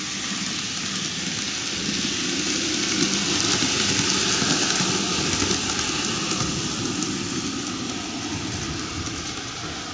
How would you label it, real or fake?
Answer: real